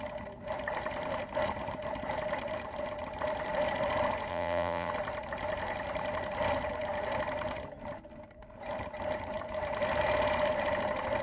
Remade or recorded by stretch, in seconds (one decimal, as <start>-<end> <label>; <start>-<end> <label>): 0.0-4.3 recorded; 4.3-4.9 remade; 4.9-11.2 recorded